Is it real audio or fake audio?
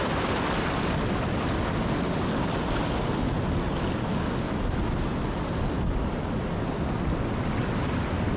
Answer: real